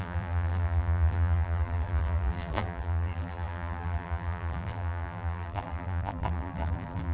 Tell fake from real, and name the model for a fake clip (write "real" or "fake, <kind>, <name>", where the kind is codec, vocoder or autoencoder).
fake, vocoder, BigVGAN v2